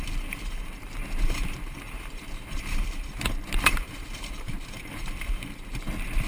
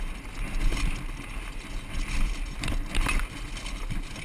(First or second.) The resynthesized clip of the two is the first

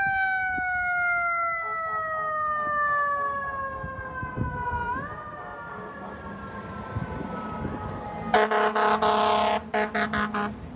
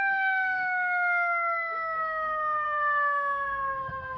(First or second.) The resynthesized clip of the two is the second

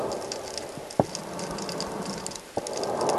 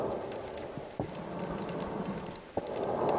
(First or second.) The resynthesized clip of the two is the second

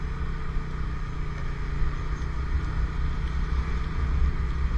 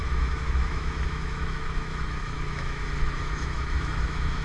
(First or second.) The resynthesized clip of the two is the second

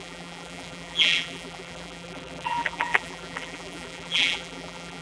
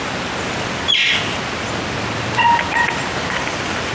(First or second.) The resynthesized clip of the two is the first